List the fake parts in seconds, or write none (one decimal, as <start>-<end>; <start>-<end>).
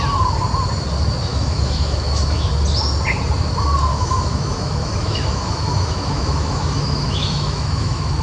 1.3-2.5; 3.9-8.2